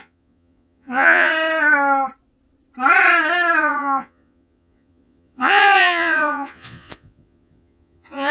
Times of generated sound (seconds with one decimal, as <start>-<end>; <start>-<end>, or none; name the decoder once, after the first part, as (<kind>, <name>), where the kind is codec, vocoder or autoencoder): 0.0-1.3 (vocoder, Vocos); 3.6-8.3